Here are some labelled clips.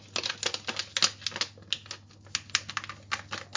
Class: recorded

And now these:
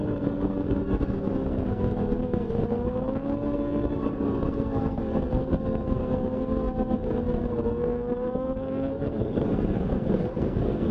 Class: remade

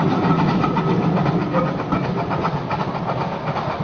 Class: recorded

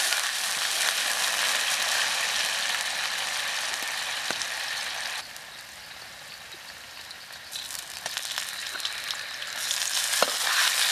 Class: recorded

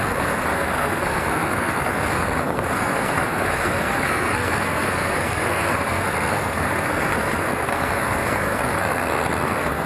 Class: remade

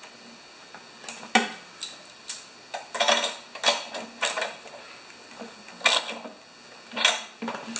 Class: recorded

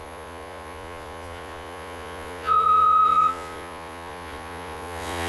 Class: remade